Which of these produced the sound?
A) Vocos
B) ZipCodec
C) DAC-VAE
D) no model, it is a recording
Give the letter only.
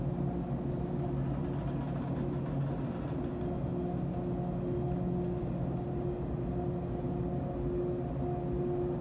D